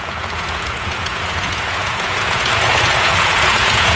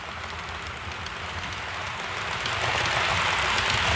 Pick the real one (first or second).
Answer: second